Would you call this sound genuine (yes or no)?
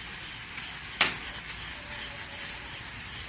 yes